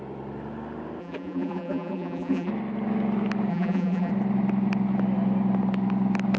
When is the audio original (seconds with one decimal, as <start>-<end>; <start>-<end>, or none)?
0.0-1.0; 2.5-3.5; 4.1-6.4